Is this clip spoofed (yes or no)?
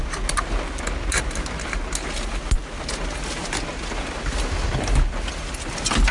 no